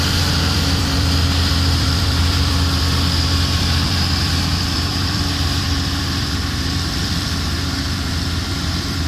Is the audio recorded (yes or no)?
no